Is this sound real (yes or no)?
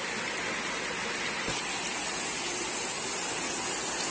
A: yes